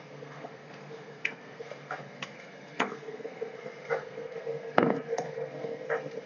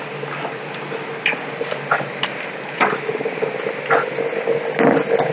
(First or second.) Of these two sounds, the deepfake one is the first